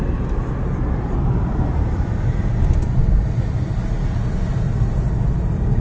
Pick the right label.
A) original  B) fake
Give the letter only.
A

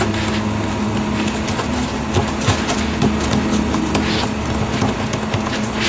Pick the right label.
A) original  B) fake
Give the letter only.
A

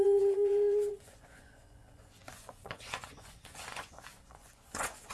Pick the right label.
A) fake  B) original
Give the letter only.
A